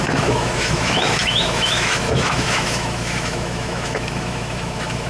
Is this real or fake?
fake